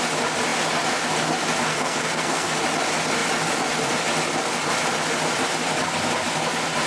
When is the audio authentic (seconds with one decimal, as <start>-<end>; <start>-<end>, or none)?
0.0-1.7; 2.6-6.9